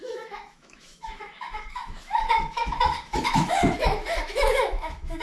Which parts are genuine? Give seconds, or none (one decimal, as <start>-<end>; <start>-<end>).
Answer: none